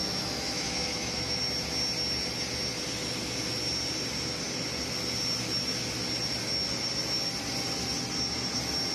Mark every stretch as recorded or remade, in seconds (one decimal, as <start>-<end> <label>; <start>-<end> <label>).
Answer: 0.0-1.4 remade; 1.4-8.9 recorded